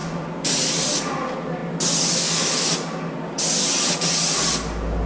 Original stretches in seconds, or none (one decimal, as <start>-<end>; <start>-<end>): 0.0-5.1